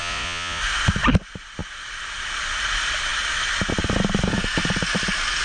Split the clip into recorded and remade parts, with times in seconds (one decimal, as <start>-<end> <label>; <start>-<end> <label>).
0.0-0.6 remade; 0.6-5.4 recorded